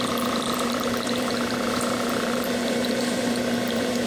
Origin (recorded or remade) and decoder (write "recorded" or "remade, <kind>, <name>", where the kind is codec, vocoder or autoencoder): remade, vocoder, BigVGAN v2